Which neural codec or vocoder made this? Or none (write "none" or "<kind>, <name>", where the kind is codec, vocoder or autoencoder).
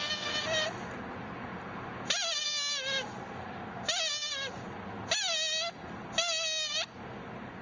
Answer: none